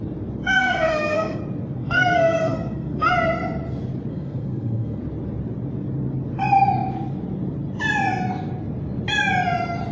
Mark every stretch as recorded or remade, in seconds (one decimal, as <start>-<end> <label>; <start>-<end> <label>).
0.0-0.4 recorded; 0.4-1.4 remade; 1.4-1.8 recorded; 1.8-3.1 remade; 3.1-4.1 recorded; 4.1-5.0 remade; 5.0-9.9 recorded